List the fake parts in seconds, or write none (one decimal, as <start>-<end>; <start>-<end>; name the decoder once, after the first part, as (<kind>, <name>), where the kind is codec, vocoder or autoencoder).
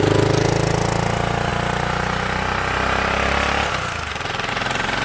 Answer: none